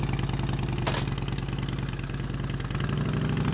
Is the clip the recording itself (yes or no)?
yes